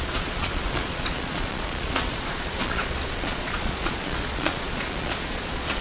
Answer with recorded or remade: remade